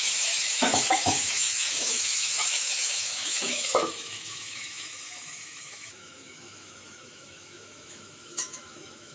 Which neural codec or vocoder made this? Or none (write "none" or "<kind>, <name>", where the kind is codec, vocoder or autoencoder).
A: autoencoder, DAC-VAE